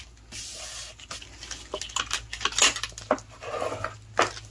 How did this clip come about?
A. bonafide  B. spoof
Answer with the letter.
A